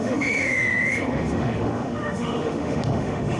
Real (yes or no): no